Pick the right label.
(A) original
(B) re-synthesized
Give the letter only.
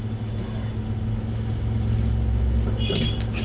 A